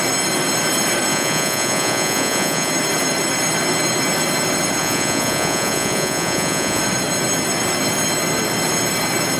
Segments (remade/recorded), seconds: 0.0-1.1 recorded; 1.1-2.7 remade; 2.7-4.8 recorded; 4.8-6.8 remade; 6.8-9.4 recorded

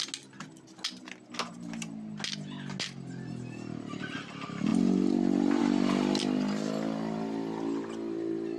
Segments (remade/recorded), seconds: 0.0-8.6 recorded